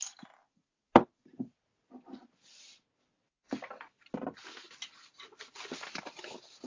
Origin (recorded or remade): recorded